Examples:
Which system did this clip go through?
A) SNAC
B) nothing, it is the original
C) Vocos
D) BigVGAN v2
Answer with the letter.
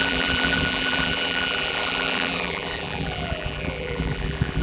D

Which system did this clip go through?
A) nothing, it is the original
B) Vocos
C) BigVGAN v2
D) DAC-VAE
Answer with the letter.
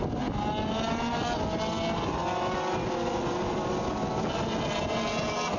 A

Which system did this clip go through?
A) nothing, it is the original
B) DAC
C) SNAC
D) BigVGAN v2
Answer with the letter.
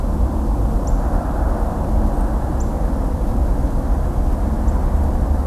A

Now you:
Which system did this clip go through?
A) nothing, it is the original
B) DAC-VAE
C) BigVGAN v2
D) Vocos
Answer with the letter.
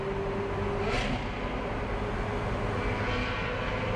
A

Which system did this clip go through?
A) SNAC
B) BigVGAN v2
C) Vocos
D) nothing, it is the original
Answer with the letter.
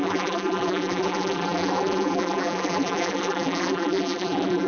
B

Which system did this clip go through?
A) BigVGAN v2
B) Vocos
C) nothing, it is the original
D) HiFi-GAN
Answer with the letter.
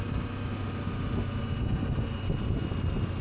C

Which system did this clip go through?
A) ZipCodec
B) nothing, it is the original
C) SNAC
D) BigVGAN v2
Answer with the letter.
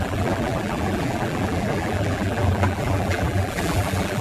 D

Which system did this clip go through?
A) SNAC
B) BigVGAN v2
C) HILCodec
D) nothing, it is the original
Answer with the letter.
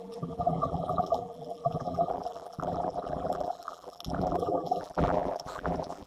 B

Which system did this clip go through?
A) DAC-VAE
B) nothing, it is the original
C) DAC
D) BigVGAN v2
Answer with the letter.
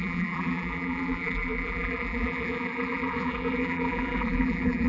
D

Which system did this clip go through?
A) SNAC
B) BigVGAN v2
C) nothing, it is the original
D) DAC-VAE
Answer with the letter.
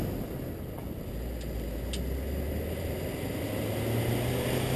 C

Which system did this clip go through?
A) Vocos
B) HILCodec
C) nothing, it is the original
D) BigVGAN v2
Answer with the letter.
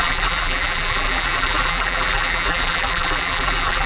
D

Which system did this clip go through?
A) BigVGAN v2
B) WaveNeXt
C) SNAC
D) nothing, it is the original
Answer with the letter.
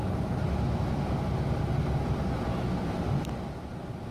D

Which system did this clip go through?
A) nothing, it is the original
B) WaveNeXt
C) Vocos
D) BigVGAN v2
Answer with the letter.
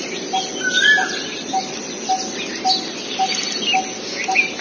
A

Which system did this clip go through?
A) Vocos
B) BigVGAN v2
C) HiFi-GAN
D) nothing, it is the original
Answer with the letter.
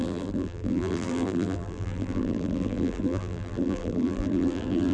B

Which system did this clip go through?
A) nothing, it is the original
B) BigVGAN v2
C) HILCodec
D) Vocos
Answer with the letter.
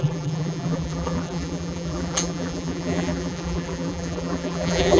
B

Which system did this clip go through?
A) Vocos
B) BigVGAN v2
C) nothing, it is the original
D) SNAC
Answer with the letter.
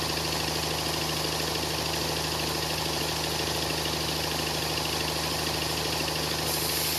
C